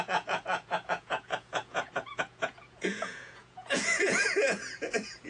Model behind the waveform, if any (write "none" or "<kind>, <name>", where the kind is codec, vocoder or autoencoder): vocoder, Vocos